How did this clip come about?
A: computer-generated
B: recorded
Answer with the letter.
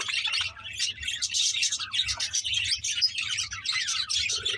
A